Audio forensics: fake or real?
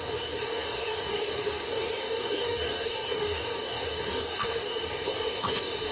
fake